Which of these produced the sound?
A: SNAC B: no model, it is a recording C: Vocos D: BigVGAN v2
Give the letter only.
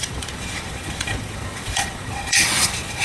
C